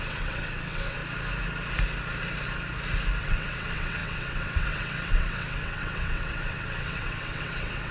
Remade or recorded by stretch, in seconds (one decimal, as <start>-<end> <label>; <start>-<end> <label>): 0.0-1.0 remade; 1.0-3.2 recorded; 3.2-7.9 remade